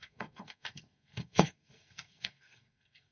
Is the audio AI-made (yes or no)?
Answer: yes